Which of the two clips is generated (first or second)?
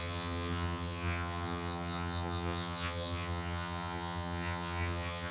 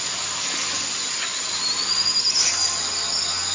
first